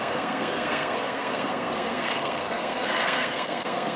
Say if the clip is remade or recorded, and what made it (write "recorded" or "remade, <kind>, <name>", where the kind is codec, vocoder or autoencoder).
remade, codec, SNAC